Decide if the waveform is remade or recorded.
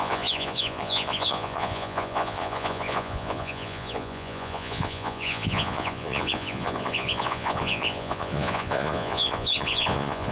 remade